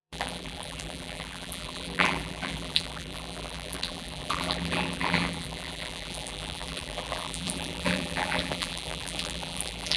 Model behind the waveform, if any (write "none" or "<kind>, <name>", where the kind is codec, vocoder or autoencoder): vocoder, BigVGAN v2